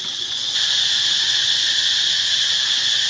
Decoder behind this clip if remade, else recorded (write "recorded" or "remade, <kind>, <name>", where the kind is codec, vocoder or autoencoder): remade, vocoder, Vocos